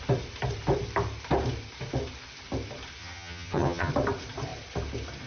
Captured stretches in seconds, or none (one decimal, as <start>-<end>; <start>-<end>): 0.0-3.0; 3.9-5.3